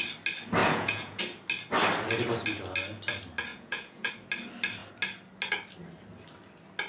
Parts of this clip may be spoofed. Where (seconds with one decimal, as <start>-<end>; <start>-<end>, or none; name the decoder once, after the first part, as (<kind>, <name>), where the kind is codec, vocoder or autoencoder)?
0.6-1.2 (vocoder, Vocos); 3.5-4.1